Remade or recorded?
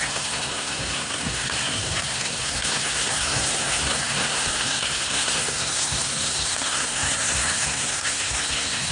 remade